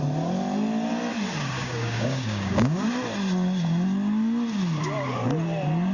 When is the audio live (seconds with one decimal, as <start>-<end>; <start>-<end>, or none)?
0.0-1.4; 2.9-5.9